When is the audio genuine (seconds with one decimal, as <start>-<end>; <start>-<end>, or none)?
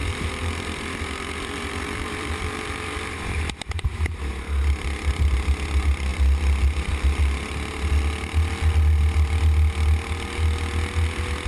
4.3-11.5